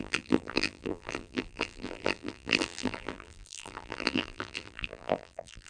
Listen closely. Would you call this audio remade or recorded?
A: remade